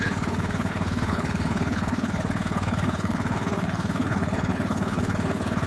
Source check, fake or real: fake